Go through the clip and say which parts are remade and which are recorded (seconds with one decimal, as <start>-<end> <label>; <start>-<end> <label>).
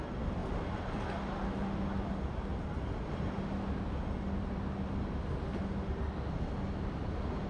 0.0-0.4 recorded; 0.4-1.0 remade; 1.0-7.5 recorded